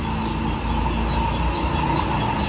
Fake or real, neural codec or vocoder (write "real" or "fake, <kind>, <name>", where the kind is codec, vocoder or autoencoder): real